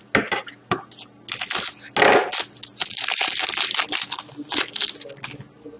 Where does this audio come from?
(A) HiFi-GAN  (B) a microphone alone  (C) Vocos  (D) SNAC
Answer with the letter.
B